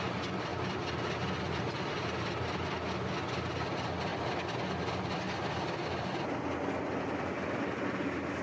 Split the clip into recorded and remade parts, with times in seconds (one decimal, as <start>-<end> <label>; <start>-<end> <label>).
0.0-4.1 recorded; 4.1-4.6 remade; 4.6-8.4 recorded